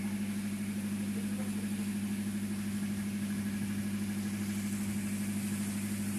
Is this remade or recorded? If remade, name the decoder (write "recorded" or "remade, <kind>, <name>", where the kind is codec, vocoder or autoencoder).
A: recorded